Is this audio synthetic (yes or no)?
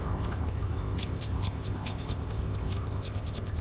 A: yes